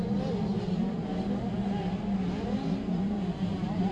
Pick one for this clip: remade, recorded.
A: recorded